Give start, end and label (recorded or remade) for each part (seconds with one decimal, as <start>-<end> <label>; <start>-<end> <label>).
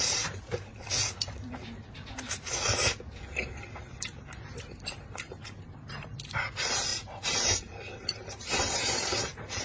0.0-0.7 remade; 0.7-5.1 recorded; 5.1-9.6 remade